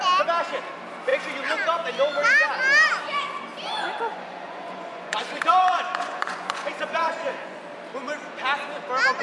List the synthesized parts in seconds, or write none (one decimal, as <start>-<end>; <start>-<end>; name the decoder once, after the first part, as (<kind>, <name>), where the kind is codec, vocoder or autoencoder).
4.1-7.6 (vocoder, Vocos)